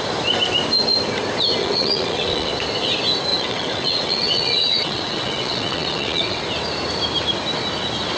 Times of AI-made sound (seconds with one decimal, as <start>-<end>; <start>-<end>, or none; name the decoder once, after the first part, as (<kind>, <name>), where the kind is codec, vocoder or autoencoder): 1.6-2.5 (vocoder, WaveNeXt); 3.3-6.4